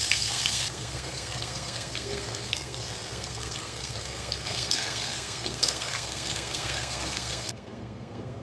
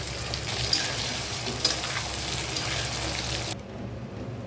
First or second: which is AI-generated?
first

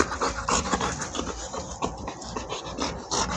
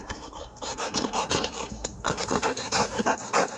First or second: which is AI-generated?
second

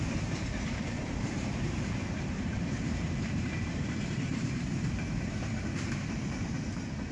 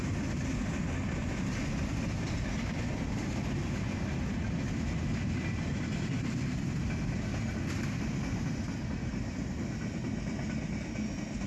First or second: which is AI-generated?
first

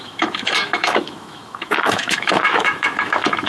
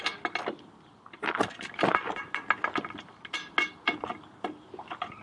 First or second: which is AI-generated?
first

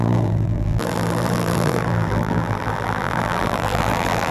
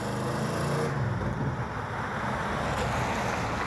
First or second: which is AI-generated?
first